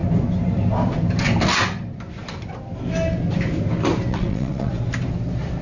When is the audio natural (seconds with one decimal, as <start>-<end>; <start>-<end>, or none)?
0.0-4.1; 4.7-5.6